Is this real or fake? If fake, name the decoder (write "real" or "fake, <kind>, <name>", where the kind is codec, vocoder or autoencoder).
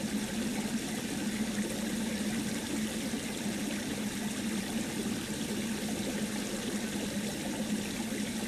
real